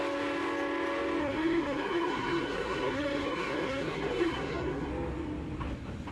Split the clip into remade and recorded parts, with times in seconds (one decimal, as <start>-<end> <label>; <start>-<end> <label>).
0.0-1.2 recorded; 1.2-4.9 remade; 4.9-6.1 recorded